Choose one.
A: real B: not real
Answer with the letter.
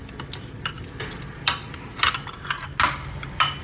A